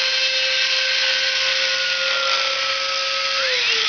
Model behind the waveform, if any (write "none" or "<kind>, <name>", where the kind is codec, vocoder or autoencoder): none